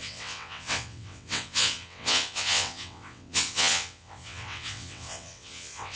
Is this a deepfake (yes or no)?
yes